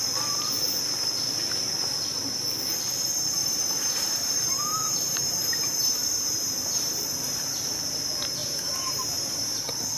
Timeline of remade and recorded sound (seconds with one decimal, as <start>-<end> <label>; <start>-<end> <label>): 0.0-3.4 recorded; 3.4-7.6 remade; 7.6-8.4 recorded; 8.4-9.5 remade; 9.5-10.0 recorded